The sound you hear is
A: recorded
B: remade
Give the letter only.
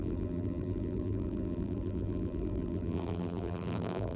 B